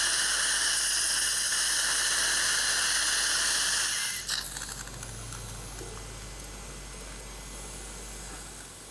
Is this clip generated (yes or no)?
no